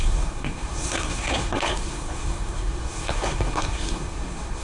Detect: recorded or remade remade